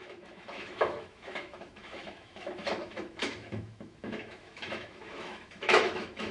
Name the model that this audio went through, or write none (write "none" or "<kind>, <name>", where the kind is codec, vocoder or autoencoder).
autoencoder, DAC-VAE